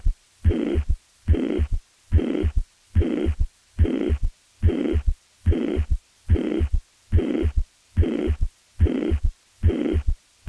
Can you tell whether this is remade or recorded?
remade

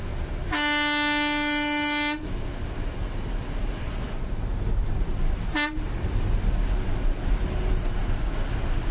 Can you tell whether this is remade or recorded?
recorded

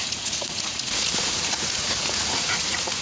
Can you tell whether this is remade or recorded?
remade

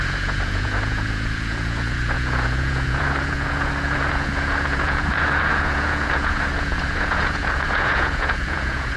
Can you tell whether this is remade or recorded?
remade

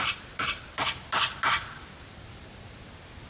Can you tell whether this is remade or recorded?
recorded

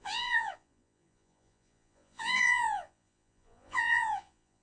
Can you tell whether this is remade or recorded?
remade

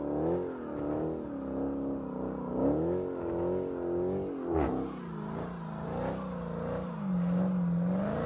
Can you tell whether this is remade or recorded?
recorded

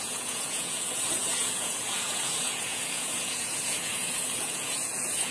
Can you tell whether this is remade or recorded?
remade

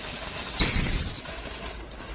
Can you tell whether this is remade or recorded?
recorded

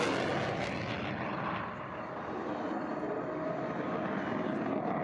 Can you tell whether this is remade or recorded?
recorded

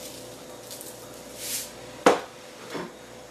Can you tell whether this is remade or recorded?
recorded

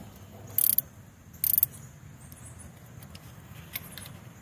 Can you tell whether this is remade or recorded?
recorded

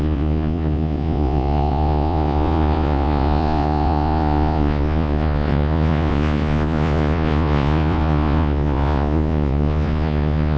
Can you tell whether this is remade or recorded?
remade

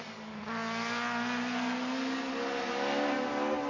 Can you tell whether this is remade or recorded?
recorded